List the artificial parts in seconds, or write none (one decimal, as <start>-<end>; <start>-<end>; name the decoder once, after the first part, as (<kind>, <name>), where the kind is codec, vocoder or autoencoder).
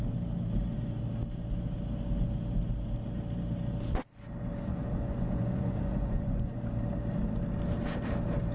4.7-6.6 (vocoder, Vocos)